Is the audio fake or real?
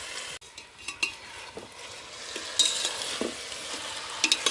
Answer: real